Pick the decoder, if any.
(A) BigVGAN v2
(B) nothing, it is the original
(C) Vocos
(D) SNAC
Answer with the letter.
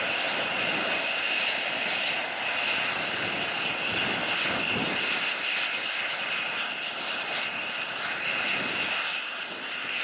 B